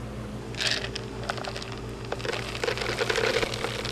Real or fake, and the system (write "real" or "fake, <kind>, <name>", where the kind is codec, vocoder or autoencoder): real